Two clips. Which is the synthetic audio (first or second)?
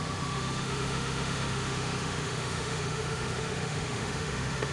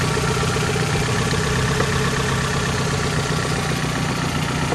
first